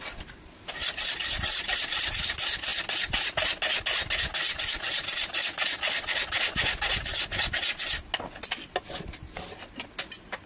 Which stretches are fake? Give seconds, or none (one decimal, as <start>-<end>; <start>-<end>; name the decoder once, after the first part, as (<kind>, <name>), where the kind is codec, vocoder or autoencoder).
none